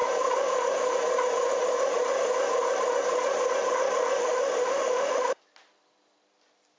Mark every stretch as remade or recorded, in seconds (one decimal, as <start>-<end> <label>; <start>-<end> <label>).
0.0-4.2 recorded; 4.2-5.4 remade; 5.4-6.8 recorded